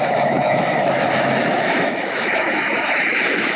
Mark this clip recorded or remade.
remade